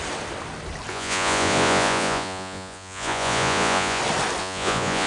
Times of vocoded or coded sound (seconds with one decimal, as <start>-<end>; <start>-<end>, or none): 0.9-4.0; 4.4-5.1

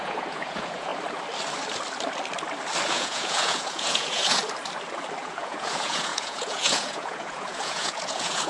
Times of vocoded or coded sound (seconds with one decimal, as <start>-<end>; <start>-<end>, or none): 0.0-0.9; 2.9-4.4; 5.2-8.5

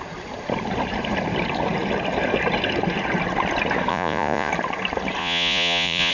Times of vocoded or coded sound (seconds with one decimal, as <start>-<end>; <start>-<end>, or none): 3.9-4.5; 5.2-6.1

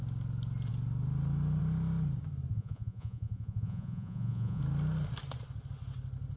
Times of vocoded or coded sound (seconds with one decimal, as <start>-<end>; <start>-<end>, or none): 2.5-4.6

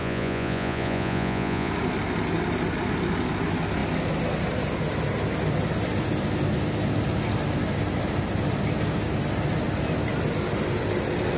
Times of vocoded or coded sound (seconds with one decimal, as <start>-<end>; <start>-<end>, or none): 0.0-1.7

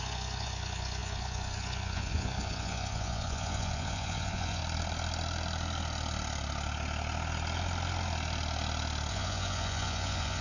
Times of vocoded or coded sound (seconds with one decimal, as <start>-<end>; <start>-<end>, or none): 0.0-4.6; 9.1-10.4

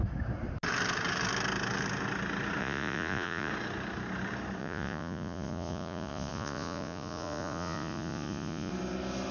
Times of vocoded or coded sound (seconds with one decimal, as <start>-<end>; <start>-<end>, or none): 2.6-3.5; 4.6-8.7

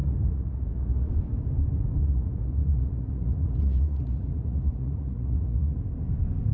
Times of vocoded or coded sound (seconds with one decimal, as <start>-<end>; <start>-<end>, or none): 0.0-1.1; 2.0-5.8